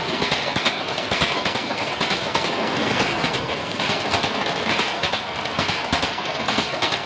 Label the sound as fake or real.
fake